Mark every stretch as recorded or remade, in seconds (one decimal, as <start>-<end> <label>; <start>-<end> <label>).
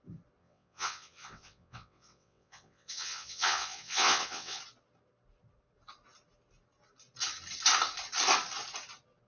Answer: 0.0-0.4 recorded; 0.4-4.6 remade; 4.6-9.3 recorded